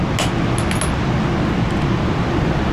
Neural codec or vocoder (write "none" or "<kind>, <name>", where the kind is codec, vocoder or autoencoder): none